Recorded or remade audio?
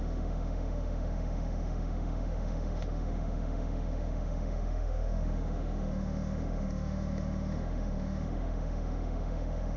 remade